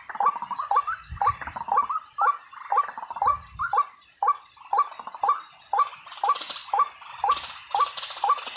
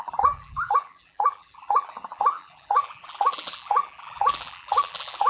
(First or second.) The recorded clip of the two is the first